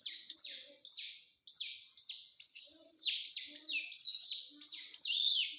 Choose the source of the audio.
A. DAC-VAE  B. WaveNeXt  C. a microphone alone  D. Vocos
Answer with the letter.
C